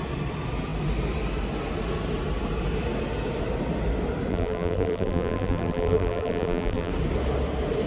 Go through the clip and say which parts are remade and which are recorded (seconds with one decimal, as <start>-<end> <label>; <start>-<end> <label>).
0.0-4.3 recorded; 4.3-6.9 remade; 6.9-7.9 recorded